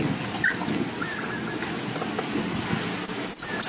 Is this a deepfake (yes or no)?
no